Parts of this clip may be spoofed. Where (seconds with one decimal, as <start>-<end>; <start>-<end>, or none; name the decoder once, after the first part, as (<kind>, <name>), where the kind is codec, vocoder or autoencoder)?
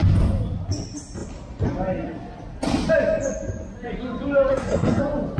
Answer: 4.5-5.0 (codec, SNAC)